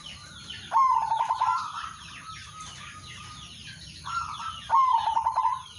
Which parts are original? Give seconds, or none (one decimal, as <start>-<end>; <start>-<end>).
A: 0.0-5.8